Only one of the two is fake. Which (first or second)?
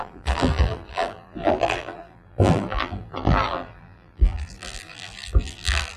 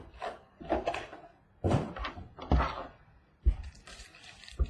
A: first